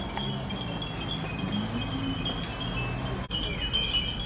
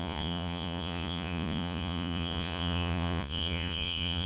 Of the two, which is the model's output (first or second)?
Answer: second